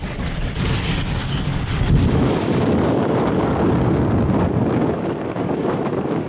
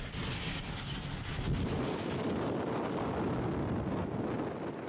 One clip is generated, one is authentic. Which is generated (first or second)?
first